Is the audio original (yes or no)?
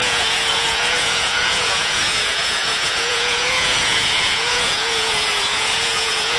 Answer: no